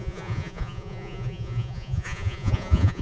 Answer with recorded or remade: remade